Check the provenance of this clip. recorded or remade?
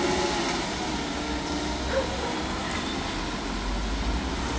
recorded